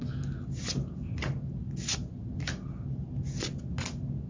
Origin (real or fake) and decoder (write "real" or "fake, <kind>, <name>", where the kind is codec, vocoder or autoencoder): real